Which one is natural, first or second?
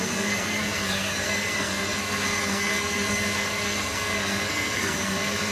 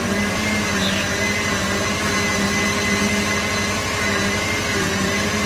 second